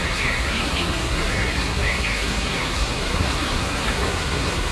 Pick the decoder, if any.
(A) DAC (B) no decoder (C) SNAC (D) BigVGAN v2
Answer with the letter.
C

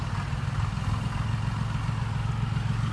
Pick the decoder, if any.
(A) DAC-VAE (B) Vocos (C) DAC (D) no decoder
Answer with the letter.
D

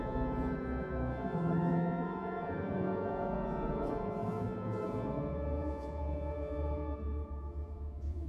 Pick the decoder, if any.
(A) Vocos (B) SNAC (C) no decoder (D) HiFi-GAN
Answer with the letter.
A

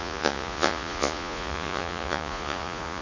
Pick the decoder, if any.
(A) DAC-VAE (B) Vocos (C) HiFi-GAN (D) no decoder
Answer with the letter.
B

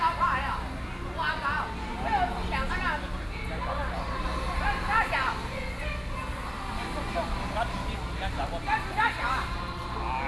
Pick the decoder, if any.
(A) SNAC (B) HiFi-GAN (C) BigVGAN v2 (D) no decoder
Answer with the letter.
D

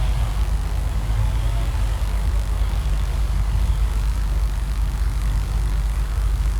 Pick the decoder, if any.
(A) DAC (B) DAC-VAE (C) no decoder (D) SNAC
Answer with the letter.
A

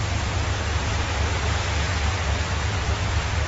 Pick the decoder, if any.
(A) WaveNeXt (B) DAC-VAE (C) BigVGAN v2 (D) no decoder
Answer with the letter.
D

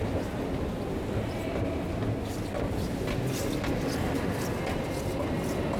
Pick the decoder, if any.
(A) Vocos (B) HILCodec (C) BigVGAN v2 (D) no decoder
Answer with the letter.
D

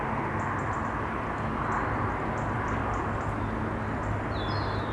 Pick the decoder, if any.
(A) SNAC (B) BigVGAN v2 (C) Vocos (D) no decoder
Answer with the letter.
D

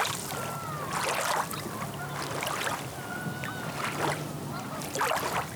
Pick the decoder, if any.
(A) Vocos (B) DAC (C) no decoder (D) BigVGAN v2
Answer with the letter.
C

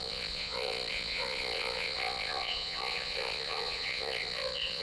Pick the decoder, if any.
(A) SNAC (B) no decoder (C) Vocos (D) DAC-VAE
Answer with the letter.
C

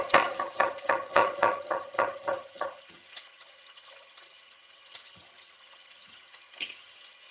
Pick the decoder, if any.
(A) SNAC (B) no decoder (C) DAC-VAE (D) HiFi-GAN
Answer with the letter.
D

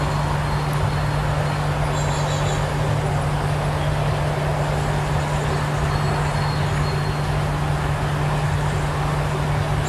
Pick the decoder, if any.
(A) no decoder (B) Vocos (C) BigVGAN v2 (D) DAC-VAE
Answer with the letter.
A